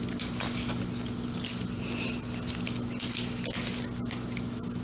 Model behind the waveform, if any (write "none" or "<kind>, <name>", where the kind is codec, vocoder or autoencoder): none